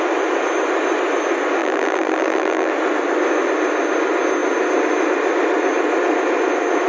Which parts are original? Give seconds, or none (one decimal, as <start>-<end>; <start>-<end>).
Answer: 0.0-1.6; 2.7-6.9

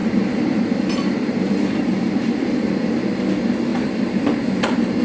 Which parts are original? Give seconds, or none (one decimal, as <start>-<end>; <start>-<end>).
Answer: 2.7-3.7